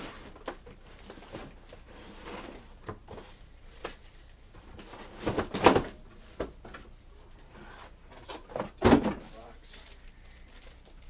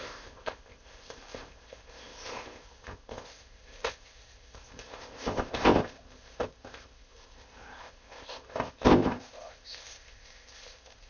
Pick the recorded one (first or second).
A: first